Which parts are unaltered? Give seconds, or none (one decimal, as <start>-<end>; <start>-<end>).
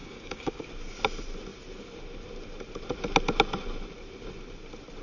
0.6-5.0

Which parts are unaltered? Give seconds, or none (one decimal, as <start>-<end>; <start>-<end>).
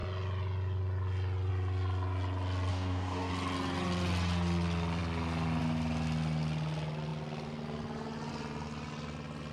0.0-2.7; 3.3-9.5